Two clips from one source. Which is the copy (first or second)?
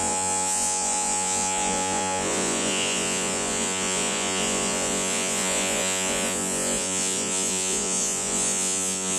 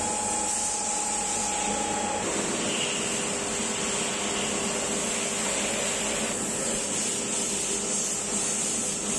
first